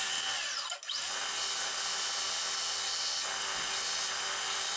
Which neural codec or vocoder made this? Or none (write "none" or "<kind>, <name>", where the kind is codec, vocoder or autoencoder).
none